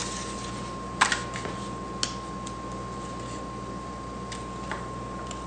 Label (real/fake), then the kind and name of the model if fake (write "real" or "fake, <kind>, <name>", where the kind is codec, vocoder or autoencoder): real